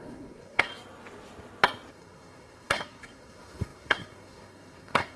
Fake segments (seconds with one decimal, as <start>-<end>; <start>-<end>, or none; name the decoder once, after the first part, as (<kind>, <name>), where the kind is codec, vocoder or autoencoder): 0.0-0.7 (codec, SNAC); 1.9-5.2